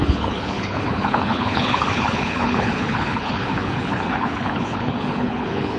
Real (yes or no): no